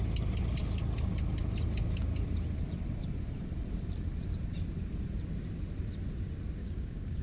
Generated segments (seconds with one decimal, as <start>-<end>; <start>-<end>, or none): 6.6-7.2